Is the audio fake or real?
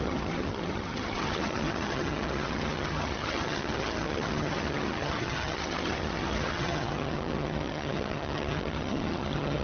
fake